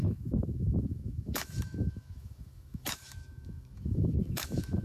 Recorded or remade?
remade